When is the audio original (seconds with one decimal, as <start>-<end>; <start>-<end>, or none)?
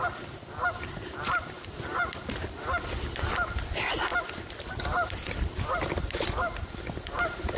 0.0-7.6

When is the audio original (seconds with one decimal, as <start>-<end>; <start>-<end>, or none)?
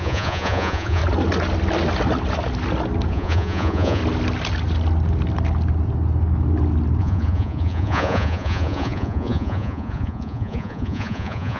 1.0-3.1; 4.0-7.0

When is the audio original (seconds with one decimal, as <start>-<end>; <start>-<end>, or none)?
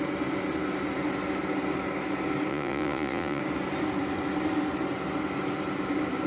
0.0-2.5; 3.4-6.3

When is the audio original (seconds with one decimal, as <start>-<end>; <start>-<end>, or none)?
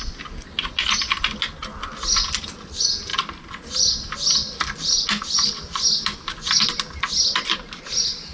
0.0-8.3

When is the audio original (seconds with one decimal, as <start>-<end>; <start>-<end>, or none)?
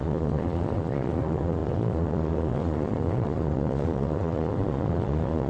none